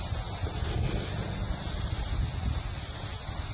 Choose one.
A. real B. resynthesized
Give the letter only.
A